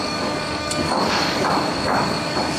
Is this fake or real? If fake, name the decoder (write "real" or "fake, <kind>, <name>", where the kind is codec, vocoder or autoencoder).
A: fake, codec, DAC